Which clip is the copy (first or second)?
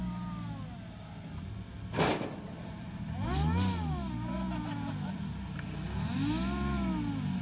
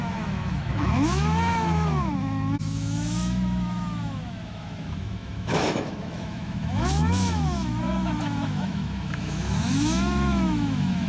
second